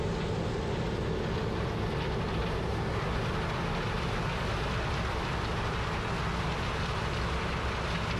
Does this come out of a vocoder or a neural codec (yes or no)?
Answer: no